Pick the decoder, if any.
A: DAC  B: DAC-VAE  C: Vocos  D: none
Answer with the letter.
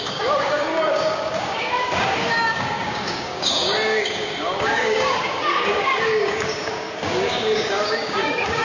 A